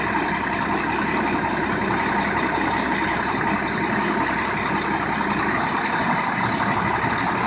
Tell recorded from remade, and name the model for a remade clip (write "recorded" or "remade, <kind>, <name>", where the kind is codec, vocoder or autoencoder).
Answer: recorded